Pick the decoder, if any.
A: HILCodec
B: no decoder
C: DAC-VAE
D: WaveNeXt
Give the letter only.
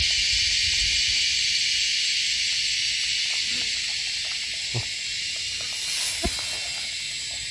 B